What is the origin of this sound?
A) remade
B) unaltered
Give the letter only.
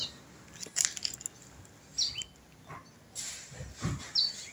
B